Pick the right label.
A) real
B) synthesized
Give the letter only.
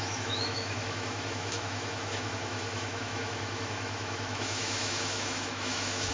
B